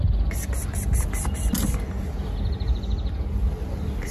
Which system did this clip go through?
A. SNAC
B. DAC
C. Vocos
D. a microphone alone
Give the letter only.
D